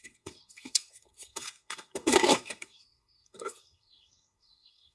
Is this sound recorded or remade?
remade